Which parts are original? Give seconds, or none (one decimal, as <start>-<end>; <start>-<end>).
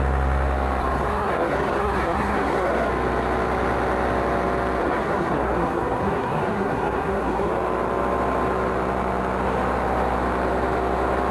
0.0-0.8; 2.9-4.8; 7.5-11.3